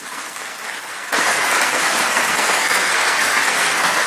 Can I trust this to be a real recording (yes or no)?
no